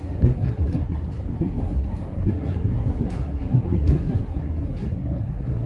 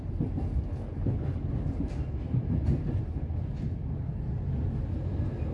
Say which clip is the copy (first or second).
first